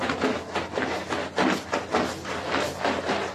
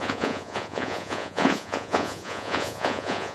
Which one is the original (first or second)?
first